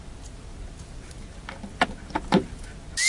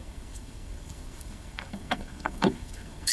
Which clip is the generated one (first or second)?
second